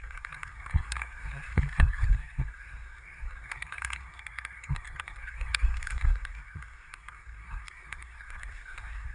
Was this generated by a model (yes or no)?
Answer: yes